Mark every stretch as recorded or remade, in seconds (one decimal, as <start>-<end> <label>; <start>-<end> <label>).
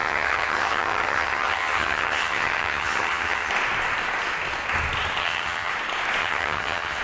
0.0-3.5 remade; 3.5-5.2 recorded; 5.2-5.7 remade; 5.7-6.2 recorded; 6.2-7.0 remade